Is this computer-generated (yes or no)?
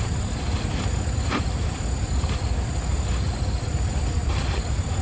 no